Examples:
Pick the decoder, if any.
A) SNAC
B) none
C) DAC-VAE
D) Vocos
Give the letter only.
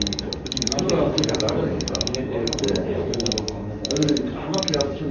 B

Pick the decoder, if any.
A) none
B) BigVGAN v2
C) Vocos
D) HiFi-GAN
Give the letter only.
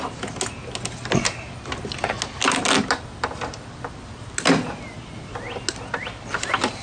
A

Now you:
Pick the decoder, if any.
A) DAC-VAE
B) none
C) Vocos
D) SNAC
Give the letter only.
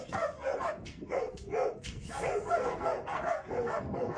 D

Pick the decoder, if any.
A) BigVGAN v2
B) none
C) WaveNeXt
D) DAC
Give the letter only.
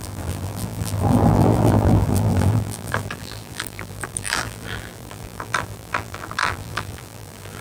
A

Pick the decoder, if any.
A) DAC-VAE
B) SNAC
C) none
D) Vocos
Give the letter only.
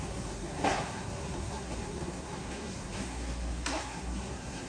B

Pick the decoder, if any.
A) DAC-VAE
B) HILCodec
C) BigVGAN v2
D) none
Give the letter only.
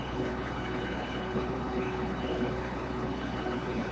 B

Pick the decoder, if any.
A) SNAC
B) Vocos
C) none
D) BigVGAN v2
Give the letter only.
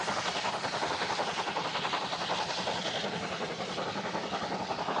C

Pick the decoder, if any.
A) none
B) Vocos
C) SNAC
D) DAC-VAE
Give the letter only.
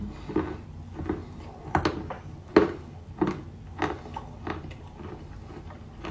A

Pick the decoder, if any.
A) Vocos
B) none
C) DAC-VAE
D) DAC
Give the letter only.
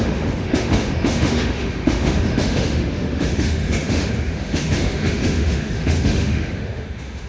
C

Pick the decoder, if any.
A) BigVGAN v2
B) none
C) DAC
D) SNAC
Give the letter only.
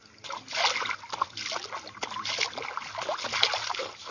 B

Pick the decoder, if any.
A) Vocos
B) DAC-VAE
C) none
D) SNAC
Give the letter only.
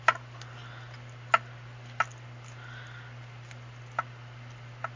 C